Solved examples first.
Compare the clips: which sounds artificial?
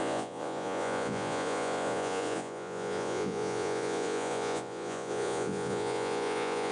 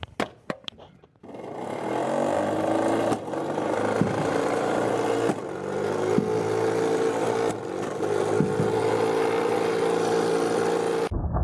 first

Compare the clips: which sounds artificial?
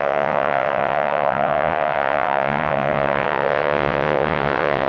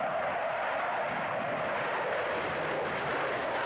first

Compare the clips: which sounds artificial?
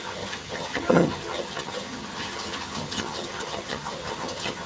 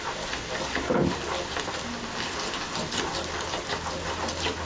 first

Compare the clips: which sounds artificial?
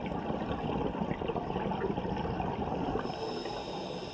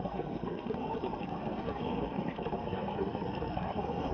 second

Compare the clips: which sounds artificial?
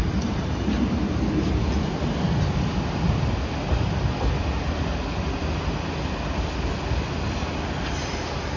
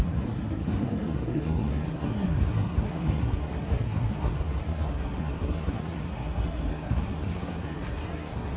second